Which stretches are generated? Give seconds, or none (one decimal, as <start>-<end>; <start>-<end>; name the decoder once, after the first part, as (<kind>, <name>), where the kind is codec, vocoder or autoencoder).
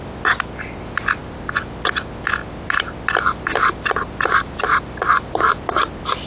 2.4-6.3 (vocoder, BigVGAN v2)